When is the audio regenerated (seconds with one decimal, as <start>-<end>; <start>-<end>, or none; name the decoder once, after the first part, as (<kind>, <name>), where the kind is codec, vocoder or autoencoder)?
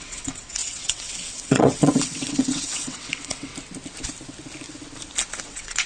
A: 0.0-3.5 (vocoder, WaveNeXt); 5.4-5.9